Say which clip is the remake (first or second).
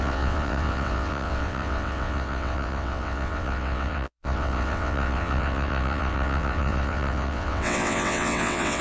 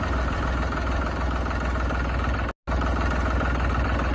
first